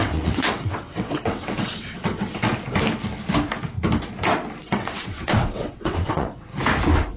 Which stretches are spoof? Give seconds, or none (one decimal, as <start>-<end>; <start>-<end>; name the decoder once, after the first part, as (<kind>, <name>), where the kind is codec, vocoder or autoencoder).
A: 0.0-2.5 (vocoder, WaveNeXt); 4.6-6.5